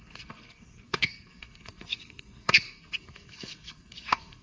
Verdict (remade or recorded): remade